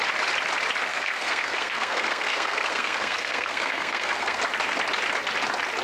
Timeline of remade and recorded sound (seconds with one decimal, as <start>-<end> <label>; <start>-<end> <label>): 0.0-0.9 recorded; 0.9-4.4 remade; 4.4-5.8 recorded